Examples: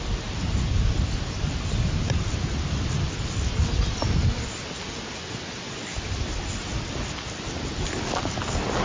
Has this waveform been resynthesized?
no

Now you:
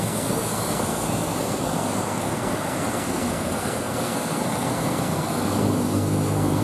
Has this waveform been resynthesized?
yes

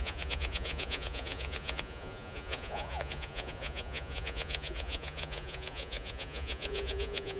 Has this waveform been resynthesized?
yes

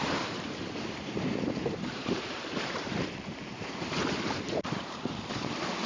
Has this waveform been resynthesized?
yes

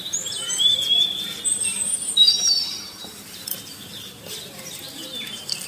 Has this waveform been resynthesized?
yes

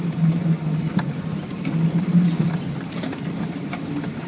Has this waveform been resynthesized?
no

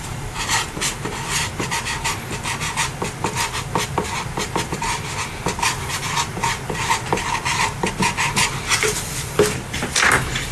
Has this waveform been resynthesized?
yes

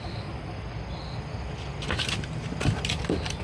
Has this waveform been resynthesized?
no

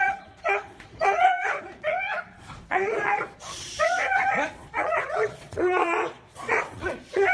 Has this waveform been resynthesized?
yes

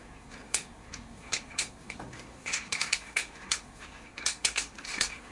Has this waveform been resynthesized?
yes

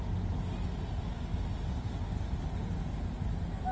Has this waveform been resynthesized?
no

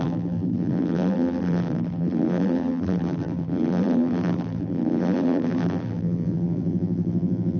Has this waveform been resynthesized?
yes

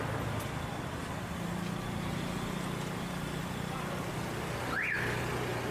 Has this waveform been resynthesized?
no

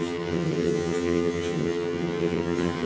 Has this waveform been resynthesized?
yes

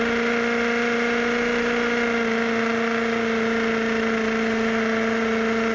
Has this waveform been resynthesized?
no